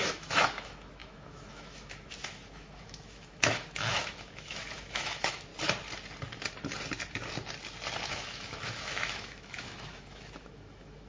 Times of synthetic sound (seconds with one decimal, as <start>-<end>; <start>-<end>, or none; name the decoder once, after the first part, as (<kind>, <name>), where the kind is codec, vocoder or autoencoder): 0.0-5.5 (autoencoder, DAC-VAE); 8.1-11.1